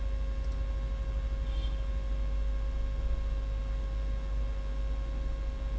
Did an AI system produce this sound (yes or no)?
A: no